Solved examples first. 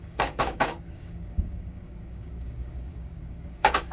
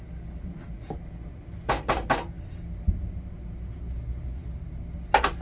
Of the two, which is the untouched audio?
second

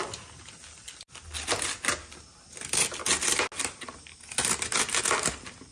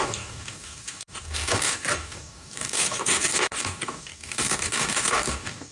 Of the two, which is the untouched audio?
first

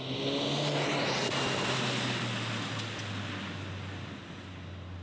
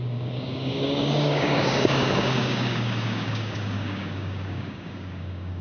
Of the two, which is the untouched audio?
first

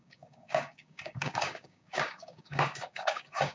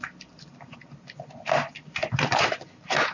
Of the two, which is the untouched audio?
second